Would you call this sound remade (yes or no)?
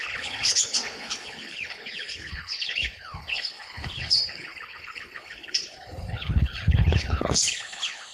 yes